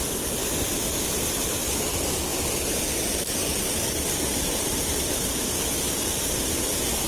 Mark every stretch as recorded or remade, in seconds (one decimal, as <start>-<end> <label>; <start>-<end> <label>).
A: 0.0-2.3 recorded; 2.3-3.4 remade; 3.4-4.8 recorded; 4.8-5.3 remade; 5.3-7.1 recorded